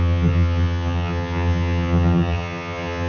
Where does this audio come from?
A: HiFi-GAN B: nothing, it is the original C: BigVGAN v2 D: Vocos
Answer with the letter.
A